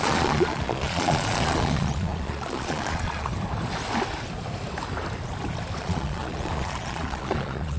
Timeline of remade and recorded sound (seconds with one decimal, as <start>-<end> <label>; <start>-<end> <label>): 0.0-3.3 remade; 3.3-5.8 recorded; 5.8-7.8 remade